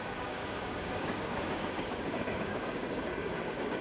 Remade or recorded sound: remade